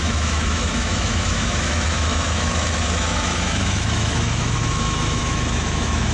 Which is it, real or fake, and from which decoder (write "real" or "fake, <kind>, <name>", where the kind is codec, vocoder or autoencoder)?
fake, autoencoder, DAC-VAE